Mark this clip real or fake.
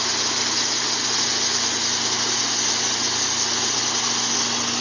real